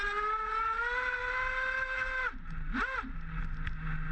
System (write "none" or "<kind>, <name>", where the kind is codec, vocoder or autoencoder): none